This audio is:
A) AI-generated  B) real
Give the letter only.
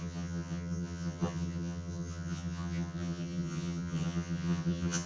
A